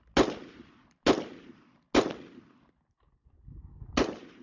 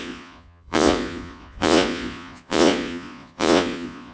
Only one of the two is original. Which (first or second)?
first